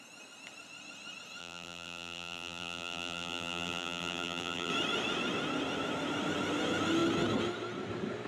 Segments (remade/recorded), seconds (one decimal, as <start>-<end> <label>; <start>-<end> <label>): 0.0-1.4 recorded; 1.4-4.7 remade; 4.7-8.3 recorded